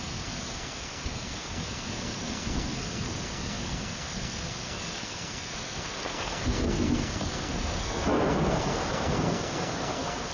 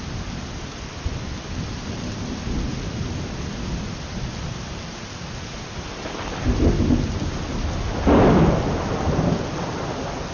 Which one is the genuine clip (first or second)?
second